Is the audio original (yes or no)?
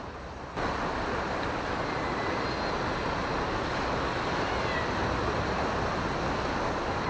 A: yes